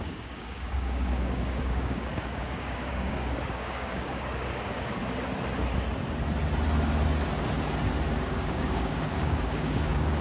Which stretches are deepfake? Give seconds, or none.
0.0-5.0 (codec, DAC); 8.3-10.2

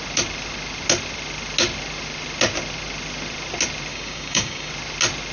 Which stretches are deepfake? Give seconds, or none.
3.9-4.7 (codec, DAC)